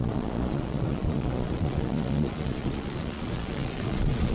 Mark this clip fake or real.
fake